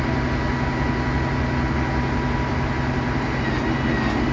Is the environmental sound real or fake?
real